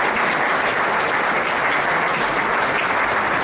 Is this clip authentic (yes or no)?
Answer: yes